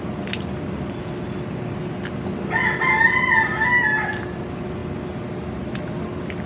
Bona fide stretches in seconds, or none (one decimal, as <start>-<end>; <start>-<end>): 0.0-6.5